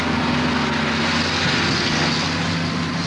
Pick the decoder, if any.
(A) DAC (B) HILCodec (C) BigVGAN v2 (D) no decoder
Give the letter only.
D